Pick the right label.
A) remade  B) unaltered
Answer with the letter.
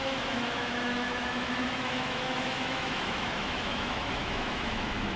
A